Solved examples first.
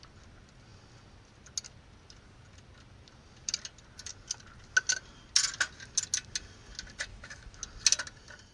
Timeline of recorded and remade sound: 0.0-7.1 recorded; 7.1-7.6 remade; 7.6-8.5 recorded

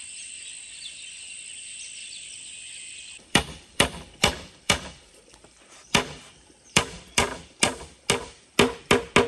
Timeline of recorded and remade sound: 0.0-2.0 recorded; 2.0-7.1 remade; 7.1-9.3 recorded

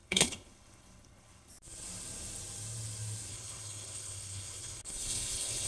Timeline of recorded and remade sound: 0.0-1.5 remade; 1.5-3.3 recorded; 3.3-5.7 remade

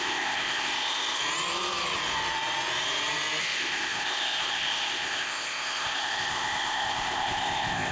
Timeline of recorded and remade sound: 0.0-1.2 remade; 1.2-3.4 recorded; 3.4-7.9 remade

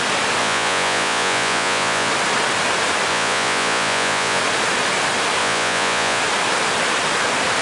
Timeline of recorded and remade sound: 0.0-0.4 recorded; 0.4-2.1 remade; 2.1-3.1 recorded; 3.1-4.4 remade; 4.4-5.4 recorded; 5.4-6.2 remade; 6.2-7.6 recorded

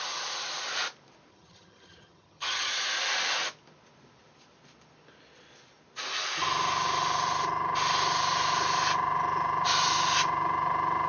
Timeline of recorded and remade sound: 0.0-1.3 recorded; 1.3-2.7 remade; 2.7-11.1 recorded

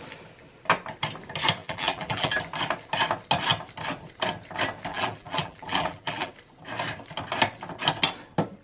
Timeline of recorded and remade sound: 0.0-1.6 recorded; 1.6-2.4 remade; 2.4-4.9 recorded; 4.9-6.3 remade; 6.3-8.6 recorded